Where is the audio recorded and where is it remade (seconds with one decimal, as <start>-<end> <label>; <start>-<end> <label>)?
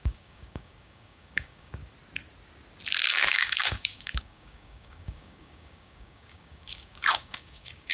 0.0-1.8 remade; 1.8-3.1 recorded; 3.1-7.9 remade